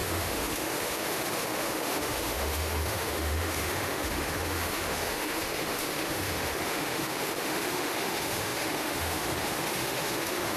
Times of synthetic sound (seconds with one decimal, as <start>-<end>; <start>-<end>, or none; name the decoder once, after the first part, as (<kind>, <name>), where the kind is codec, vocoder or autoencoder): 0.0-10.6 (autoencoder, DAC-VAE)